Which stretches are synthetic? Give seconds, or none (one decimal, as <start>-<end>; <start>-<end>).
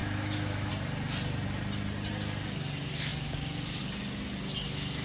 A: 0.0-0.7